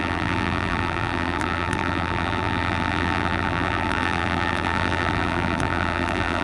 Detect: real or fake fake